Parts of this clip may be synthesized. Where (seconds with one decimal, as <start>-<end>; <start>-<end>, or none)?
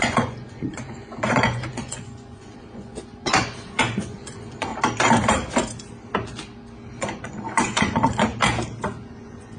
0.0-4.7; 7.0-8.3; 9.1-9.6